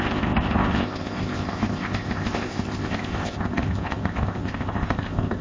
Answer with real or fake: fake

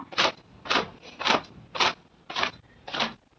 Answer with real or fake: real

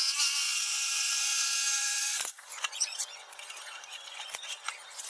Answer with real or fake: fake